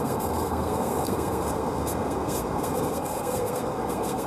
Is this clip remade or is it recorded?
remade